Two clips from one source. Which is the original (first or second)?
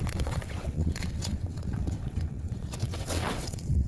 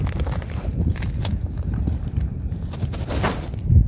second